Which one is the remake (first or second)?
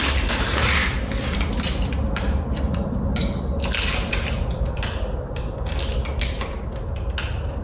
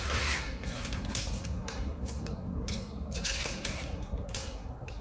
second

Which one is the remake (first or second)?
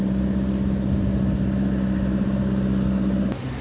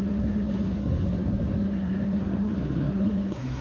second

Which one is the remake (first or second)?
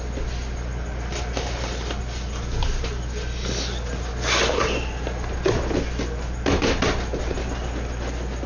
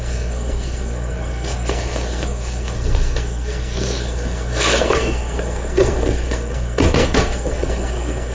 second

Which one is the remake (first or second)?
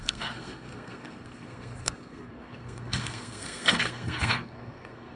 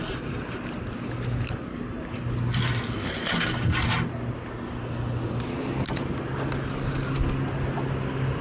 first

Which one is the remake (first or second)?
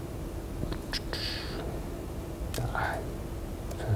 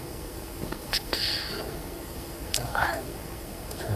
second